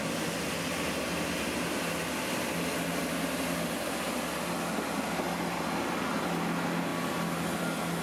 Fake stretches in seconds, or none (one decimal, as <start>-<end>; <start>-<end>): none